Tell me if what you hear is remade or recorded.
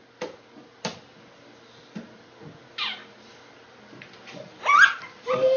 recorded